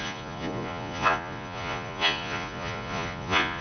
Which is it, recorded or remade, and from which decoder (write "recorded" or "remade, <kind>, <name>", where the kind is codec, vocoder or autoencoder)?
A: remade, vocoder, Vocos